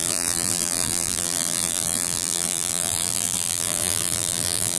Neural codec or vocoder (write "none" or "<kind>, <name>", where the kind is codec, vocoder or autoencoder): vocoder, BigVGAN v2